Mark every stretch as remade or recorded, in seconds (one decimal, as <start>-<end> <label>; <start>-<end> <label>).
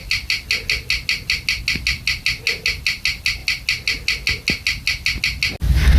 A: 0.0-6.0 recorded